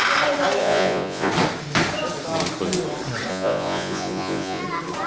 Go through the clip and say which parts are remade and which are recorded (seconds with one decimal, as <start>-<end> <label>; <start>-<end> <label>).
0.0-0.6 recorded; 0.6-1.3 remade; 1.3-3.3 recorded; 3.3-4.6 remade; 4.6-5.1 recorded